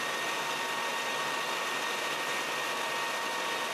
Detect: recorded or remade recorded